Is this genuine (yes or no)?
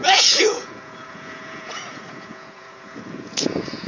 no